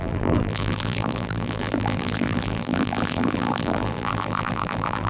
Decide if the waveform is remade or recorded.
remade